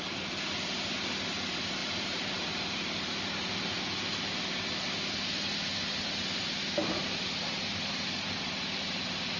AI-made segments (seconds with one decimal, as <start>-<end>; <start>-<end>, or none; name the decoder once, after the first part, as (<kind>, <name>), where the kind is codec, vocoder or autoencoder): 1.8-2.5 (vocoder, BigVGAN v2); 6.2-7.8